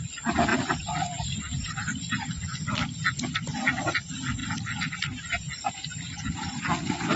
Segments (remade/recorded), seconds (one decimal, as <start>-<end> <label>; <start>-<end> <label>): 0.0-0.5 recorded; 0.5-1.4 remade; 1.4-4.4 recorded; 4.4-5.7 remade; 5.7-7.2 recorded